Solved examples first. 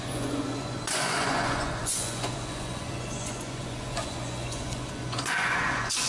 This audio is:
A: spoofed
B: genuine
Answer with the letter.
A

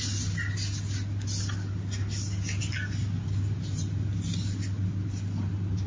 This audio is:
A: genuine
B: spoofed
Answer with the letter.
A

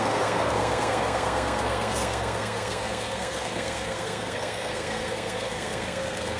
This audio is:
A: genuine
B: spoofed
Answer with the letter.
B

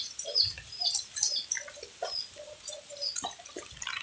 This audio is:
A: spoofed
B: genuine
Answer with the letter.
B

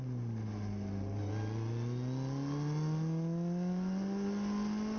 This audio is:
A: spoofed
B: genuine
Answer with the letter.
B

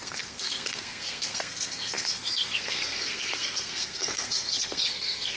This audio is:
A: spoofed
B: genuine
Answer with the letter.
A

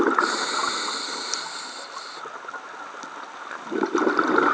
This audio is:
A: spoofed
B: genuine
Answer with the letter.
B